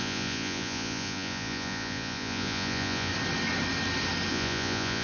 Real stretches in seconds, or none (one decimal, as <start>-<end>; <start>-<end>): 3.1-4.3